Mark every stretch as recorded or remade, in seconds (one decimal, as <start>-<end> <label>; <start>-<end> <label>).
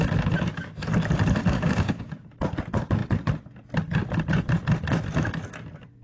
0.0-1.4 recorded; 1.4-2.1 remade; 2.1-6.0 recorded